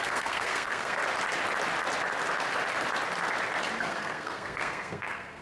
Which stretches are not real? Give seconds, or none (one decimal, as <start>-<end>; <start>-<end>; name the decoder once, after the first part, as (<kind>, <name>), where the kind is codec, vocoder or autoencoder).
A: 0.0-1.0 (codec, SNAC); 3.8-5.4